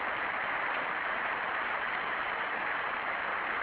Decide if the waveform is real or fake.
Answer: real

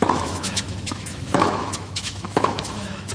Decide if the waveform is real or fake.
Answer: fake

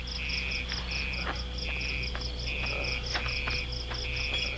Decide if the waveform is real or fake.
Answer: real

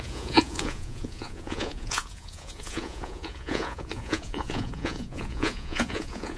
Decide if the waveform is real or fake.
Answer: fake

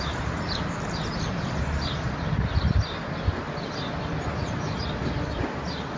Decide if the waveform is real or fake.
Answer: real